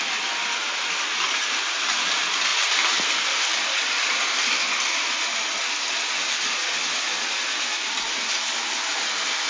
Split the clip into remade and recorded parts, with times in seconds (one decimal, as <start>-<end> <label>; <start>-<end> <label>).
0.0-9.5 recorded